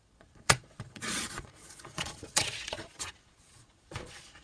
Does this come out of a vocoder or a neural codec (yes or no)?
yes